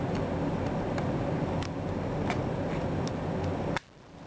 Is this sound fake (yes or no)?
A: yes